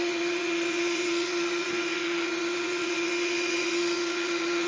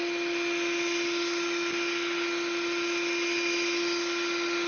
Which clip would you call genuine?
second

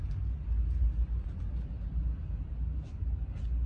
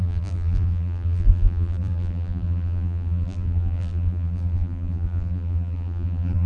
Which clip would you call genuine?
first